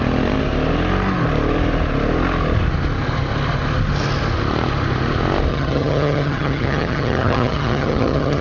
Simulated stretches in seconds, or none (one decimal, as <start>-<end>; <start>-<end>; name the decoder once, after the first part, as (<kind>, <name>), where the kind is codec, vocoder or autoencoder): 5.5-8.4 (vocoder, HiFi-GAN)